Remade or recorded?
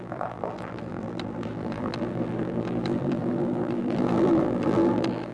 remade